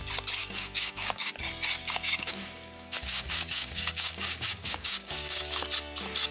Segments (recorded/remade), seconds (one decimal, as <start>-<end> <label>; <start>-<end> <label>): 0.0-0.4 recorded; 0.4-1.3 remade; 1.3-1.8 recorded; 1.8-5.6 remade; 5.6-6.3 recorded